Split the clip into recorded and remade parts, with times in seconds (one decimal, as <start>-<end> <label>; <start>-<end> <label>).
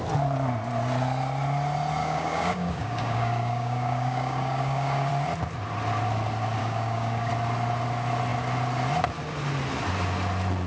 0.0-2.0 recorded; 2.0-5.1 remade; 5.1-6.6 recorded; 6.6-7.3 remade; 7.3-10.7 recorded